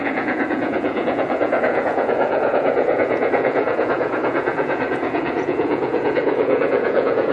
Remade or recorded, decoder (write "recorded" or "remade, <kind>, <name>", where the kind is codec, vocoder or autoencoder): remade, vocoder, Vocos